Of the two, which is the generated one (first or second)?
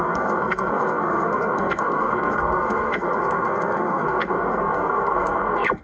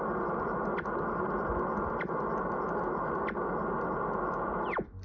first